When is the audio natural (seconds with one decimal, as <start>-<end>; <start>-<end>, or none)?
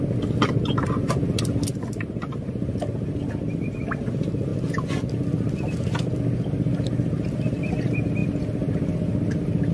0.0-9.7